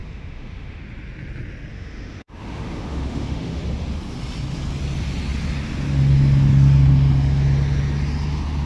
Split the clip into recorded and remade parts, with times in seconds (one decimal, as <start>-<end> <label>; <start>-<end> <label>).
0.0-0.8 remade; 0.8-1.7 recorded; 1.7-3.6 remade; 3.6-8.7 recorded